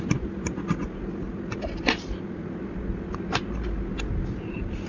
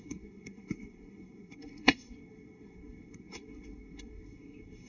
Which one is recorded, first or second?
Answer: first